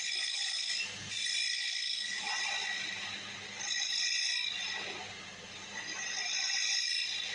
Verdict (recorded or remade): recorded